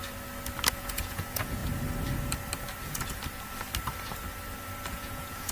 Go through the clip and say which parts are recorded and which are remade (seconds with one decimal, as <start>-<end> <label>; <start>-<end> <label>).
0.0-0.7 recorded; 0.7-1.6 remade; 1.6-4.9 recorded; 4.9-5.5 remade